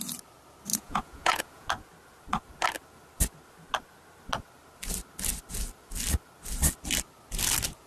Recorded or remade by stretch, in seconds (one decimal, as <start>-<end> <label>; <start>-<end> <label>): 0.0-0.7 recorded; 0.7-1.7 remade; 1.7-7.9 recorded